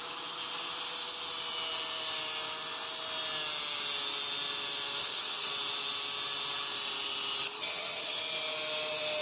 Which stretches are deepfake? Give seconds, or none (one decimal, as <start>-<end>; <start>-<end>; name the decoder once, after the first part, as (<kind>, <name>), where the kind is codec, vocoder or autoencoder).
5.0-5.5 (vocoder, HiFi-GAN); 7.6-8.2